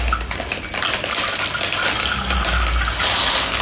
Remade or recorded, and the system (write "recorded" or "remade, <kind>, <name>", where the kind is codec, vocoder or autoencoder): recorded